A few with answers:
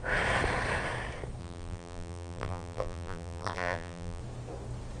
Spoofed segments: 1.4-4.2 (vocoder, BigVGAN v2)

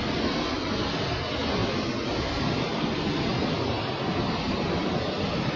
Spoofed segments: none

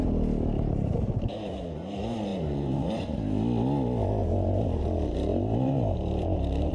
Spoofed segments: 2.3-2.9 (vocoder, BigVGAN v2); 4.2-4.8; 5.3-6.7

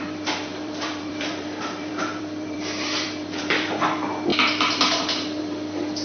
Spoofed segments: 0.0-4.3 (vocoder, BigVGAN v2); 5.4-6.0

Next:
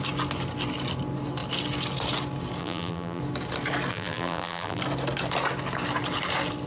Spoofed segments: 2.6-3.2 (vocoder, BigVGAN v2); 3.9-4.8

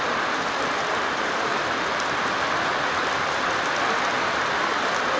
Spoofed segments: 0.0-1.5 (vocoder, BigVGAN v2); 4.6-5.2